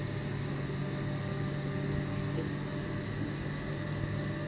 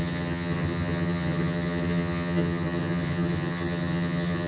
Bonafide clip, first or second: first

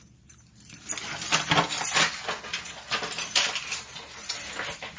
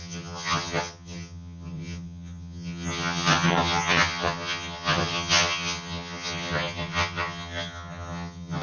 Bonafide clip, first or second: first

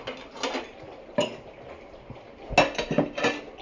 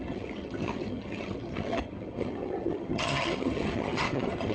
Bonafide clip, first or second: first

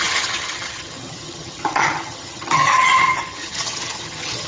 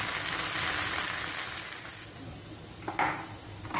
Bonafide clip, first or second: second